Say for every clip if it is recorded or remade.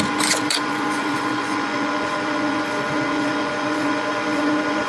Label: remade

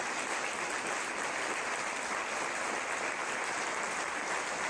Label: recorded